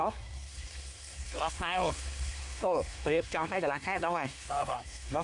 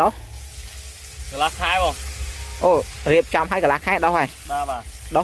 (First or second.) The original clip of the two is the second